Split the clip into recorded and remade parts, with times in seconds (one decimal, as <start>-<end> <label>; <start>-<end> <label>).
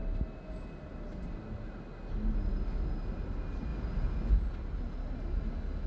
0.0-5.9 recorded